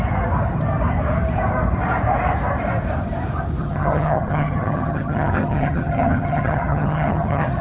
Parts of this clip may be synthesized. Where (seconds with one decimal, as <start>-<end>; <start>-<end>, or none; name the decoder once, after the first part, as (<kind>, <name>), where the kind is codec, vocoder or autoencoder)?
3.6-7.6 (vocoder, HiFi-GAN)